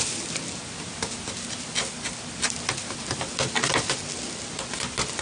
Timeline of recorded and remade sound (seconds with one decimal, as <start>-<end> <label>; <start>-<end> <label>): 0.0-5.2 recorded